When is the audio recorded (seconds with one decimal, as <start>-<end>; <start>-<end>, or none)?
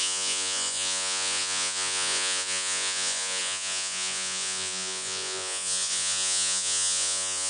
none